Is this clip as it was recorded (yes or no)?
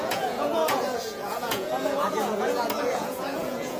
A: no